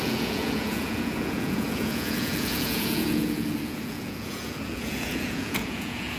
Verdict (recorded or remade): remade